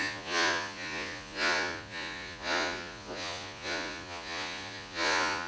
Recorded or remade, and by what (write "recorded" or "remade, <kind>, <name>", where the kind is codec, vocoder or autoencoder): remade, vocoder, Vocos